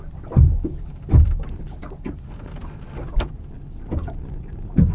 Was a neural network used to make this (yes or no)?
no